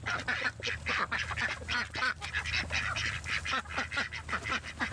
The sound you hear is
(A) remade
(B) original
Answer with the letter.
B